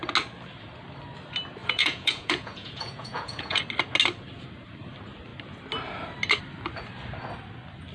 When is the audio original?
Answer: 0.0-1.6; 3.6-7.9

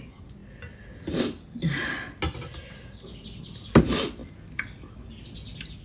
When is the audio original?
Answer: 0.0-5.8

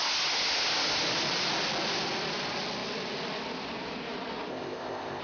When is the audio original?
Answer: 0.0-4.5

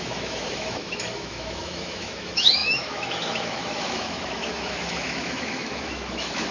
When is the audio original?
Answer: none